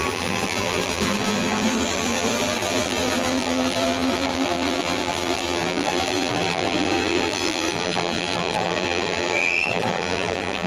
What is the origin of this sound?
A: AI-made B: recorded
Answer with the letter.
A